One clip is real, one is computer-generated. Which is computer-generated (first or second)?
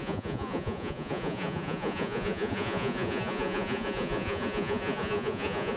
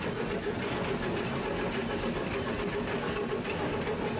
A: first